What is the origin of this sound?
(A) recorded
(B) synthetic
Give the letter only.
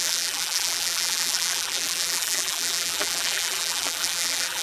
B